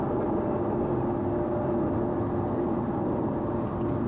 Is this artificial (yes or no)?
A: no